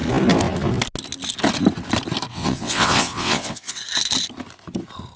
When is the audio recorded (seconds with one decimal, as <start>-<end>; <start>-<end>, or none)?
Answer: 0.0-2.3; 3.8-5.2